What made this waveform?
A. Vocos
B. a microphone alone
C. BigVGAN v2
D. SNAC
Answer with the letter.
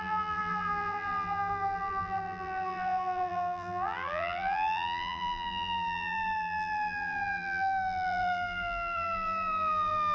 C